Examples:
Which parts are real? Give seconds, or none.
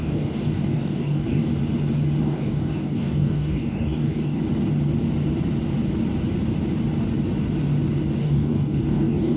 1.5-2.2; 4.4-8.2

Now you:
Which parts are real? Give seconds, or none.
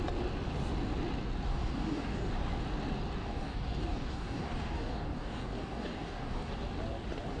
0.0-1.5; 2.3-3.2; 6.5-7.4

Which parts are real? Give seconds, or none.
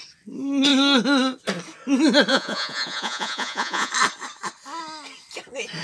0.0-2.3; 3.9-5.8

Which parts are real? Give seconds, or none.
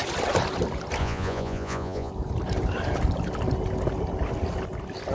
0.0-1.0; 2.1-5.1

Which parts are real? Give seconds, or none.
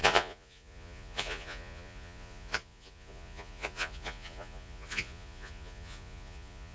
none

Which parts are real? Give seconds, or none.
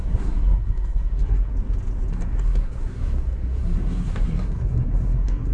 1.5-2.1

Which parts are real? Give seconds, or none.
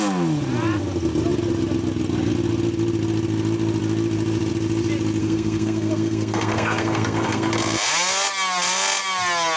0.0-5.2; 7.5-9.6